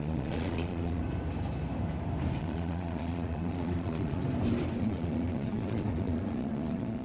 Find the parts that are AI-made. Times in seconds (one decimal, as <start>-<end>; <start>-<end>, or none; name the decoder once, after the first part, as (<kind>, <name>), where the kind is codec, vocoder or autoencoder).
0.0-1.0 (vocoder, Vocos); 2.4-4.2; 4.8-7.0

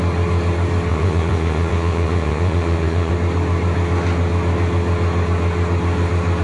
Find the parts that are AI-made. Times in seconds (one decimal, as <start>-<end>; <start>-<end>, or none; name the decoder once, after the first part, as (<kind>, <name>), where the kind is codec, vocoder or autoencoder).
0.9-3.1 (vocoder, Vocos)

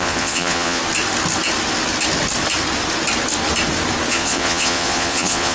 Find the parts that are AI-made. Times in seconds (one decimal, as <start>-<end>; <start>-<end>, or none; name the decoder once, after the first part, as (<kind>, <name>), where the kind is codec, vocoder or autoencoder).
0.0-0.8 (vocoder, Vocos); 4.1-5.5

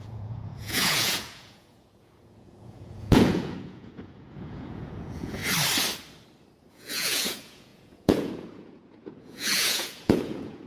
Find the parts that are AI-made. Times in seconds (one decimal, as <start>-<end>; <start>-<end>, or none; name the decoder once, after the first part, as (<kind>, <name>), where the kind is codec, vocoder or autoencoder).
0.0-5.4 (vocoder, Vocos); 6.7-10.7

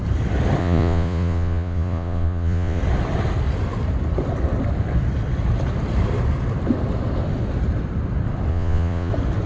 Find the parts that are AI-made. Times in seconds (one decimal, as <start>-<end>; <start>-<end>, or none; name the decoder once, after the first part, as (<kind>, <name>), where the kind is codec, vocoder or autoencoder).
0.6-2.8 (vocoder, Vocos); 8.5-9.1